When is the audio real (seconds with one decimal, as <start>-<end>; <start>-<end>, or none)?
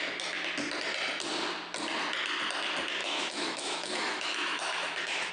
0.0-3.0